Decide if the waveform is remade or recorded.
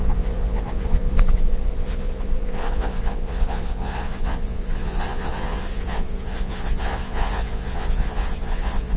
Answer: remade